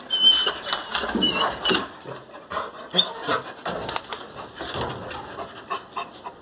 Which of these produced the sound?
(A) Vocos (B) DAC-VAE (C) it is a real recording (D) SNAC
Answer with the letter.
C